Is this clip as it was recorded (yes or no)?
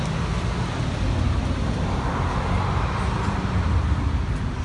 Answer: yes